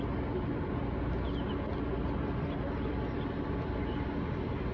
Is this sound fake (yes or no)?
no